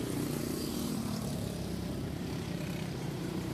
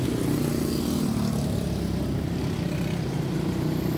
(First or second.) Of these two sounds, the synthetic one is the first